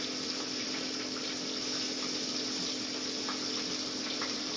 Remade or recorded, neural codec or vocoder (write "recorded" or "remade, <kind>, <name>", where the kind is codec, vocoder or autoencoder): recorded